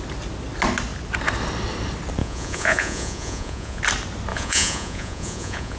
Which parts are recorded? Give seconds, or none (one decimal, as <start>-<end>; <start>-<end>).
0.0-2.2; 3.8-4.3